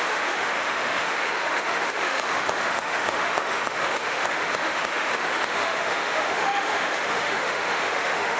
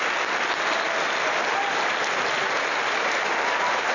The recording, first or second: second